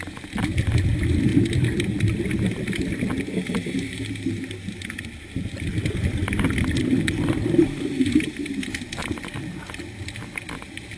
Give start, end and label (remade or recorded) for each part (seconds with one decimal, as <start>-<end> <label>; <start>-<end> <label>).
0.0-11.0 recorded